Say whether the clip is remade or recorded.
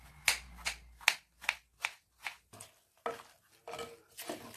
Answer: recorded